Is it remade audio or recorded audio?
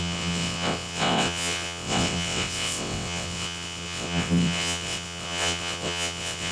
remade